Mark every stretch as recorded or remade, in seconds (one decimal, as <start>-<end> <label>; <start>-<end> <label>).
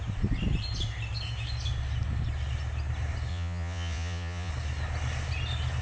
0.0-3.3 recorded; 3.3-4.5 remade; 4.5-5.8 recorded